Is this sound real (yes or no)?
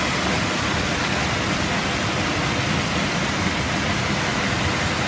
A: yes